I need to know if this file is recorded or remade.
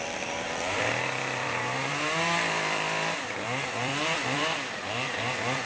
remade